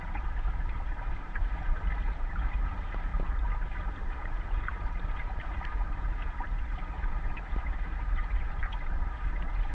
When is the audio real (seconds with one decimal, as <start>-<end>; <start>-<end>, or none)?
3.1-4.0